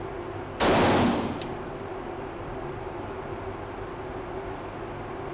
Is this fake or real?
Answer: real